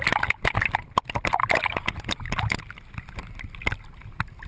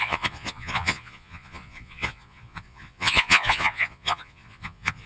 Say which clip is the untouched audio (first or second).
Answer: first